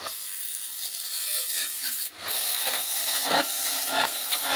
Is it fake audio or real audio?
fake